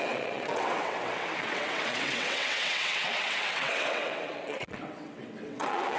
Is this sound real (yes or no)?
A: no